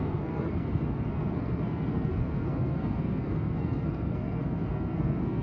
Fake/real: fake